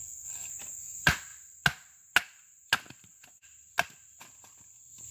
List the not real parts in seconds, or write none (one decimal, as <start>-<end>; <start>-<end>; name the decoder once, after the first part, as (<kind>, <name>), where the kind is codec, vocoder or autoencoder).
0.0-0.5 (codec, SNAC)